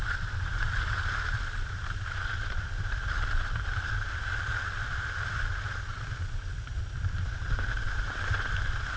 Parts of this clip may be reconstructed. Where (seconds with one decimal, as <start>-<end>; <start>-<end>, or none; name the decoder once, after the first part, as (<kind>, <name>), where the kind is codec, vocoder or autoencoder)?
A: none